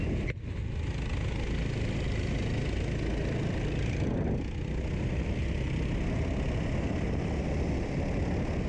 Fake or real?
real